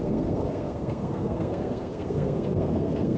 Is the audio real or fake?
fake